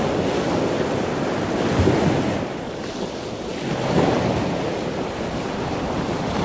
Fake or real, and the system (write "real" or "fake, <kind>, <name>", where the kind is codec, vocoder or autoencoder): real